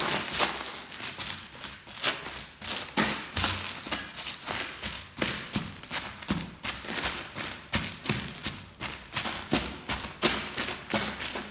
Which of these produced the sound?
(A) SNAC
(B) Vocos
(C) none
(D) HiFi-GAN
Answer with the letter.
C